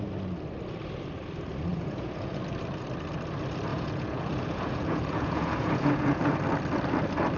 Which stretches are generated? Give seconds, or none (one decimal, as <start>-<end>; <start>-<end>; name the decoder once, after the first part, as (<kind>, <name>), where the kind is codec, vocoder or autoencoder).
1.7-2.4 (vocoder, Vocos); 3.7-6.4

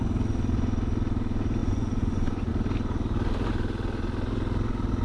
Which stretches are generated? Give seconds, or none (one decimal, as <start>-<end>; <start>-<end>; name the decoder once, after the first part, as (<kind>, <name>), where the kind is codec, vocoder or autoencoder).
1.6-2.5 (vocoder, Vocos)